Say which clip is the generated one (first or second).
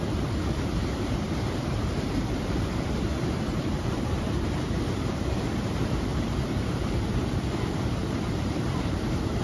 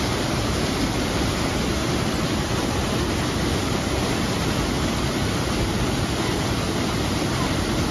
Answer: first